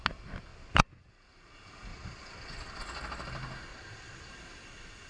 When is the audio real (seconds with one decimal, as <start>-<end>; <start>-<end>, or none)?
0.0-0.5; 1.1-1.9; 2.8-3.7; 4.3-5.1